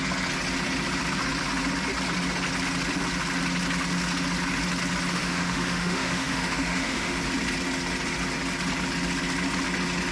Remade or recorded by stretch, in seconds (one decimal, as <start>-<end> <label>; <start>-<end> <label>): 0.0-5.1 recorded; 5.1-7.2 remade; 7.2-10.1 recorded

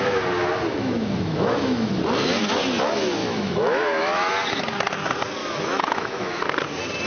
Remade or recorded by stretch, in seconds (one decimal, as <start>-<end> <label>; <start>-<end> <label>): 0.0-0.7 recorded; 0.7-1.9 remade; 1.9-3.2 recorded; 3.2-4.3 remade; 4.3-5.4 recorded; 5.4-6.4 remade; 6.4-7.1 recorded

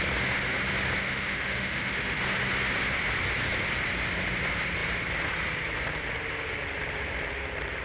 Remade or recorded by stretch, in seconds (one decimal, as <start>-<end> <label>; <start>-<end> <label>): 0.0-1.0 recorded; 1.0-2.2 remade; 2.2-7.8 recorded

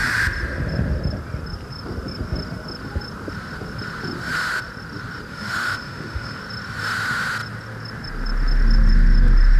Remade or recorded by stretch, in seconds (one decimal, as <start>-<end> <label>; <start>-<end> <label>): 0.0-5.3 recorded; 5.3-6.4 remade; 6.4-9.6 recorded

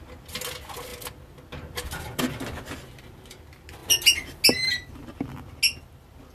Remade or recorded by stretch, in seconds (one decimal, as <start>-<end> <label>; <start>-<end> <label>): 0.0-6.3 recorded

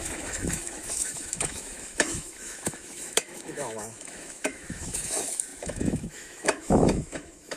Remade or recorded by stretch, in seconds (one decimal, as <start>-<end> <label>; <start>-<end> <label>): 0.0-7.6 remade

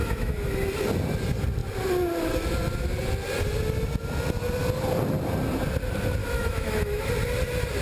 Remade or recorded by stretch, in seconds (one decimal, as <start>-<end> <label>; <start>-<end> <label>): 0.0-0.5 remade; 0.5-6.2 recorded; 6.2-7.1 remade; 7.1-7.8 recorded